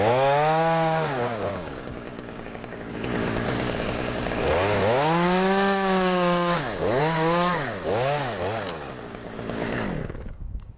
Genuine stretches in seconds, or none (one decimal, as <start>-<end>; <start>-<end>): 8.2-9.0